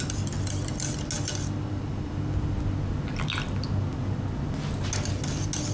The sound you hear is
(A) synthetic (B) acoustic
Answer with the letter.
B